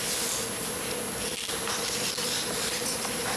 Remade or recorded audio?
recorded